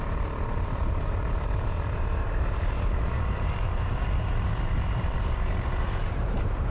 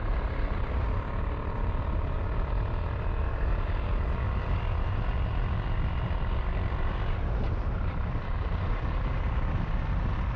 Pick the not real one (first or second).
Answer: first